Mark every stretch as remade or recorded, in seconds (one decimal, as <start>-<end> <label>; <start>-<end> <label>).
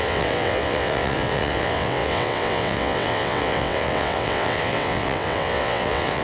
0.0-6.2 remade